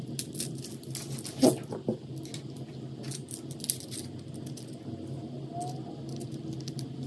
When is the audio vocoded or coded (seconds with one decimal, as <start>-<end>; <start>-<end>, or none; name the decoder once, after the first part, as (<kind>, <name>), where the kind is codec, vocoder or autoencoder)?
none